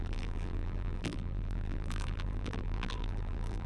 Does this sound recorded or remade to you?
remade